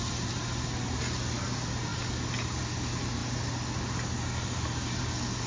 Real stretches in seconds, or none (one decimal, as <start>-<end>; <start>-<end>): 0.0-5.5